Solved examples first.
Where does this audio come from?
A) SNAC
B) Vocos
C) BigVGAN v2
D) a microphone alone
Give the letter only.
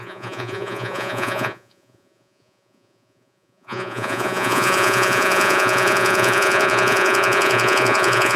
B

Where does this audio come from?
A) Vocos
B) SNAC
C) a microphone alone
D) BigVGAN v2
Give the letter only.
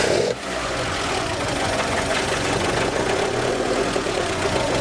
A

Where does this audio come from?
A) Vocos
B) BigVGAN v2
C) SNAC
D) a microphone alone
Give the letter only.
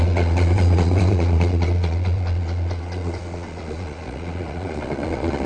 A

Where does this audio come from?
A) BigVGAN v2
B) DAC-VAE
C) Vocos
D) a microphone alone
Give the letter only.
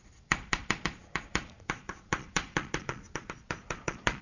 C